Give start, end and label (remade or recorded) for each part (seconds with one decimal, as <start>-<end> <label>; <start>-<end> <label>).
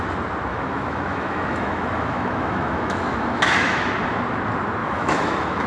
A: 0.0-0.5 recorded; 0.5-3.9 remade; 3.9-4.8 recorded; 4.8-5.7 remade